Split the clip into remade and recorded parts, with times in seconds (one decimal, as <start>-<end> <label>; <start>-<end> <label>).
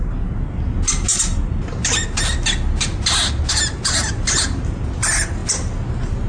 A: 0.0-6.3 recorded